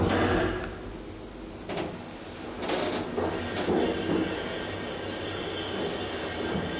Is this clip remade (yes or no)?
no